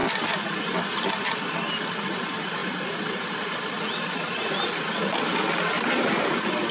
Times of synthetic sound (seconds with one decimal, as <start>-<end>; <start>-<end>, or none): none